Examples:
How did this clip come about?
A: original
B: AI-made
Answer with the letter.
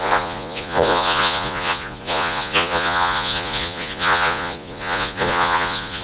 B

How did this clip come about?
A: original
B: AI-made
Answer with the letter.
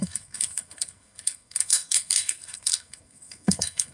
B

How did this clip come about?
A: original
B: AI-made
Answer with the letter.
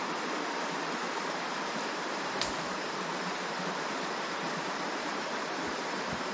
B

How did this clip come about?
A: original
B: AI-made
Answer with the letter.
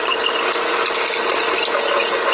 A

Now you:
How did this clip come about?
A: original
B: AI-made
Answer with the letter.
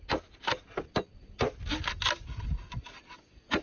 A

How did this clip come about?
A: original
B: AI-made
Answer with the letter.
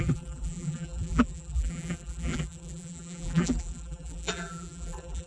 B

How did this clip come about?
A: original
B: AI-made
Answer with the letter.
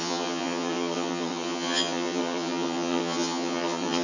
B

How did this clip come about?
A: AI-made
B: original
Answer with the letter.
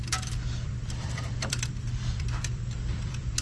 A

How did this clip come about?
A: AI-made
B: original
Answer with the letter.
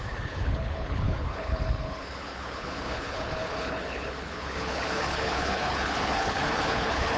A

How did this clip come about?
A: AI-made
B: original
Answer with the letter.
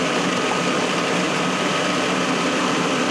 A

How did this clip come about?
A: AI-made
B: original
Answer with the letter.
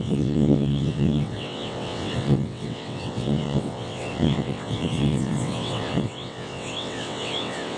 A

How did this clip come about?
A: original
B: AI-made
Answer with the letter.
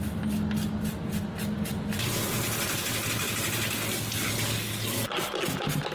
A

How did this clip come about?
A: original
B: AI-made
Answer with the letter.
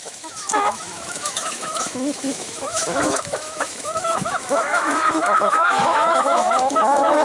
B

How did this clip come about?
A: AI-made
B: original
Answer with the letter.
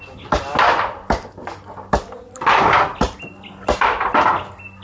B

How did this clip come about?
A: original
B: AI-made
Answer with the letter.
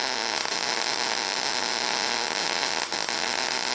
A